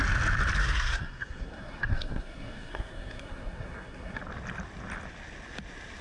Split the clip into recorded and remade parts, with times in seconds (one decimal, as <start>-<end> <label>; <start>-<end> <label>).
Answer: 0.0-0.6 recorded; 0.6-4.2 remade; 4.2-6.0 recorded

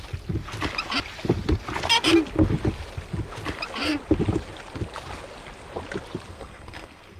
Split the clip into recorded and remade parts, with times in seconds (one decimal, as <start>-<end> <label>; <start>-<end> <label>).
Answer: 0.0-6.3 recorded; 6.3-7.2 remade

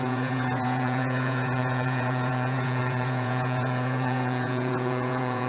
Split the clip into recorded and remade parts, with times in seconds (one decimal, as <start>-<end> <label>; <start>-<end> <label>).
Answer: 0.0-5.5 remade

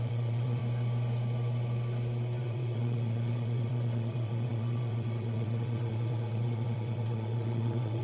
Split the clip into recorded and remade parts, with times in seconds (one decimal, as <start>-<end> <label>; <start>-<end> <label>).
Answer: 0.0-0.6 remade; 0.6-2.4 recorded; 2.4-8.0 remade

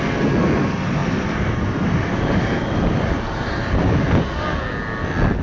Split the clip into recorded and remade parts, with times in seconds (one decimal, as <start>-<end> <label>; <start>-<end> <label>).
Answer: 0.0-1.0 recorded; 1.0-3.9 remade; 3.9-5.4 recorded

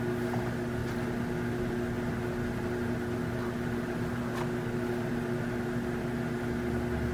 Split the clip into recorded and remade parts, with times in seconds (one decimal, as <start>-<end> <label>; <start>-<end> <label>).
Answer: 0.0-7.1 recorded

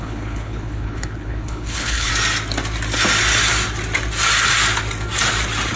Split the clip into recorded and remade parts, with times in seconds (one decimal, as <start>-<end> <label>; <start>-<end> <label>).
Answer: 0.0-2.1 remade; 2.1-5.8 recorded